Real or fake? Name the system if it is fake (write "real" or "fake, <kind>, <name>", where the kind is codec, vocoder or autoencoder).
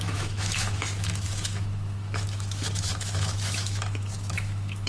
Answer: fake, autoencoder, DAC-VAE